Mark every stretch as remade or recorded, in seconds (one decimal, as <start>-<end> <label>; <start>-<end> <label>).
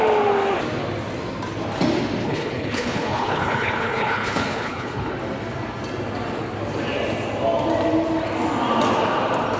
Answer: 0.0-2.2 recorded; 2.2-5.1 remade; 5.1-9.6 recorded